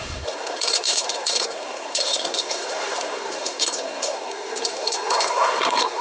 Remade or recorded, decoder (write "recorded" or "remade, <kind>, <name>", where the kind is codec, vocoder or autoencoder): remade, codec, SNAC